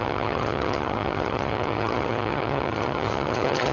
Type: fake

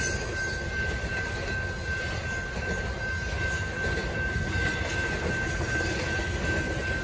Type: real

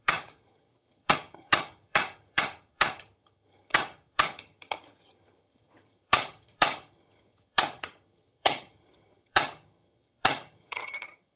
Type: fake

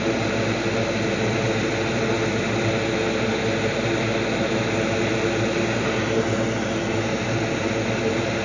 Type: real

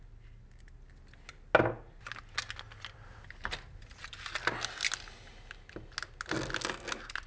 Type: real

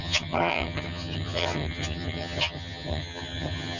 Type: fake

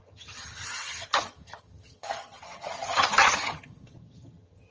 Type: fake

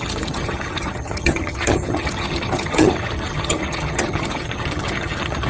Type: fake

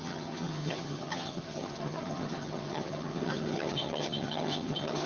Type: fake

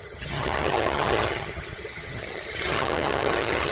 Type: fake